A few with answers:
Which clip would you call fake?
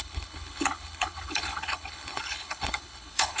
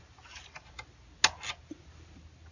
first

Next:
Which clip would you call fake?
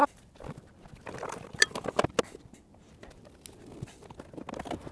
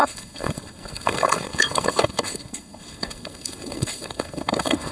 second